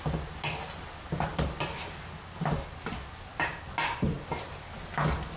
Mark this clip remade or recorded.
recorded